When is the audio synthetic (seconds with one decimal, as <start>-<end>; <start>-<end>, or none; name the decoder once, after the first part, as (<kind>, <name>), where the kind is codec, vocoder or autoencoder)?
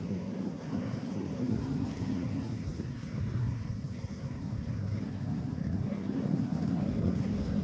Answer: 0.0-7.6 (codec, SNAC)